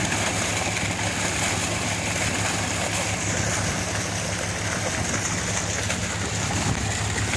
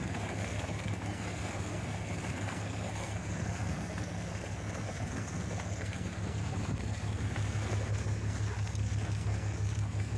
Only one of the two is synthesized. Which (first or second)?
second